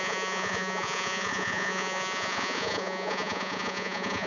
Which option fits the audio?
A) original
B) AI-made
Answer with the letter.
B